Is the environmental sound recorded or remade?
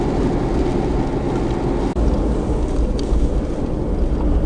recorded